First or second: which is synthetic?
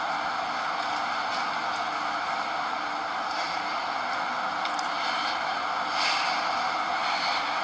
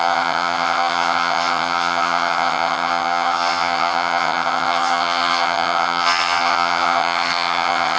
second